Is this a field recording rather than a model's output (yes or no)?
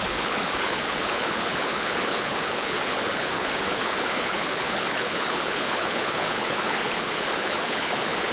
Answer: no